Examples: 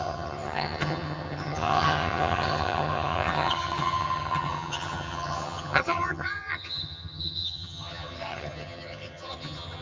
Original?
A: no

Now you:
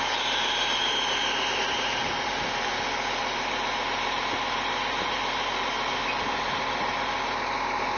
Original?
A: yes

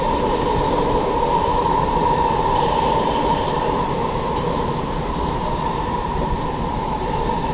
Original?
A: no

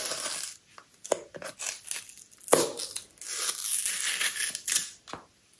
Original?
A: yes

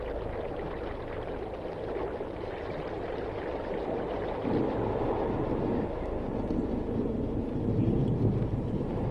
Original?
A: yes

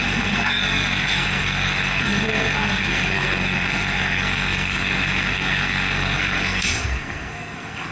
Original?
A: no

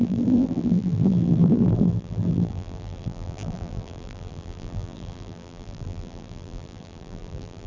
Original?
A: no